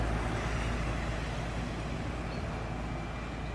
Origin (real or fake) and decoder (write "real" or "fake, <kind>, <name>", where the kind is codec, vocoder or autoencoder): real